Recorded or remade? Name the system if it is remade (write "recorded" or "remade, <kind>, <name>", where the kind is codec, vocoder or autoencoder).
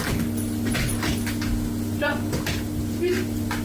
recorded